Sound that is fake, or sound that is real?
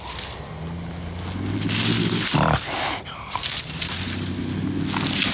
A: real